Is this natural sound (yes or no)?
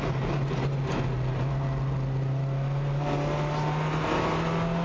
yes